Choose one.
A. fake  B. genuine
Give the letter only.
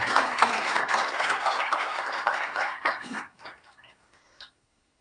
A